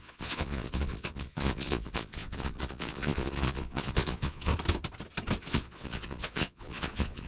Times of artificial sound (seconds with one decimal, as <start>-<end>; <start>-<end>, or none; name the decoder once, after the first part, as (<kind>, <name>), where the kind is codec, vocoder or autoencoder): 0.0-4.5 (vocoder, Vocos); 5.4-7.3

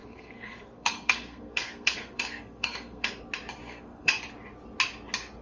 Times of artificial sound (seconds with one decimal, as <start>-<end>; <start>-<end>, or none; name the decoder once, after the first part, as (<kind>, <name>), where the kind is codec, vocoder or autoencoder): 0.0-3.2 (codec, SNAC); 3.6-4.1

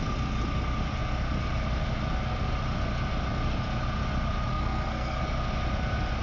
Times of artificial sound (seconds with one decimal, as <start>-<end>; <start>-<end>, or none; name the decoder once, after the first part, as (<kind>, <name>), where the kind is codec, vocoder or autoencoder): 4.5-5.2 (codec, SNAC)

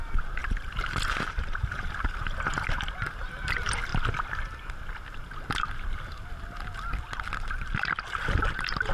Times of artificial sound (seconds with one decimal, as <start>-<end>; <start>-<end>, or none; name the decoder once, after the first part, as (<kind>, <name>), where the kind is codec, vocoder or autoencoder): 0.0-3.9 (vocoder, BigVGAN v2)

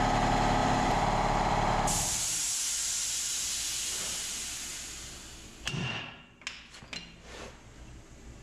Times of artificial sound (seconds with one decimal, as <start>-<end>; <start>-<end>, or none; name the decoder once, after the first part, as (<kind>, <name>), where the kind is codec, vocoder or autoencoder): 0.6-2.5 (vocoder, BigVGAN v2)